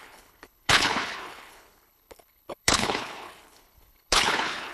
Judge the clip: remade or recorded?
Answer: remade